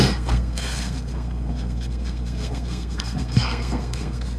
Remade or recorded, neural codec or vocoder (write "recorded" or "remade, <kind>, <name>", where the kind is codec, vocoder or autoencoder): remade, codec, SNAC